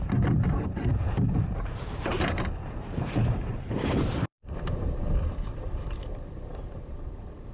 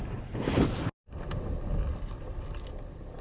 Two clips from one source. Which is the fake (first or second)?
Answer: first